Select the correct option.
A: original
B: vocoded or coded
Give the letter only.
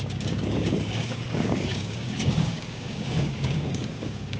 B